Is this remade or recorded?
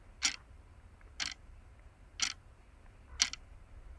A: recorded